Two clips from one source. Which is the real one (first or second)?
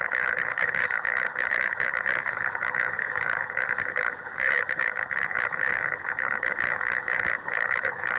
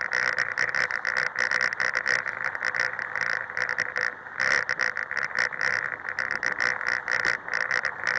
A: second